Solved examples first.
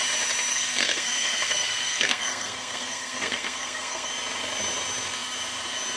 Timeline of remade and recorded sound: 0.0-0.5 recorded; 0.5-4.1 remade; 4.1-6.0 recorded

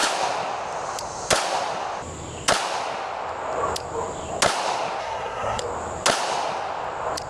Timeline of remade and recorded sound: 0.0-5.0 recorded; 5.0-5.6 remade; 5.6-7.3 recorded

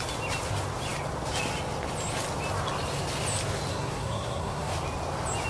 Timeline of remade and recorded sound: 0.0-3.7 recorded; 3.7-4.7 remade; 4.7-5.5 recorded

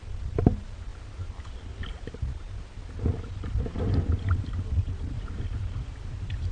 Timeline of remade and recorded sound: 0.0-6.5 recorded

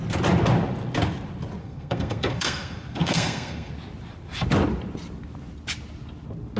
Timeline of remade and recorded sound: 0.0-1.6 recorded; 1.6-3.7 remade; 3.7-6.6 recorded